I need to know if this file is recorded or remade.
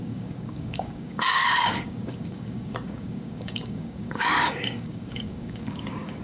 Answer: remade